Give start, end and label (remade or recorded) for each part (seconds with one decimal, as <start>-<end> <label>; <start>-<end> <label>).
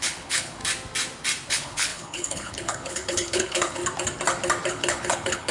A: 0.0-0.6 remade; 0.6-1.5 recorded; 1.5-3.8 remade; 3.8-4.7 recorded; 4.7-5.5 remade